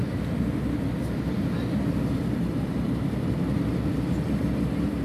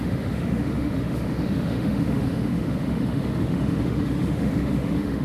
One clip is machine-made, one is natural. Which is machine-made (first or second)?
second